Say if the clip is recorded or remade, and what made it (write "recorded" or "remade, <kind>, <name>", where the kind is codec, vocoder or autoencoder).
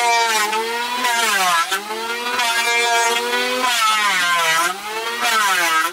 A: recorded